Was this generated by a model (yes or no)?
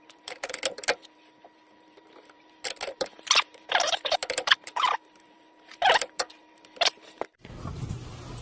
yes